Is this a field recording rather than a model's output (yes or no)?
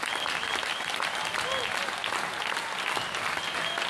yes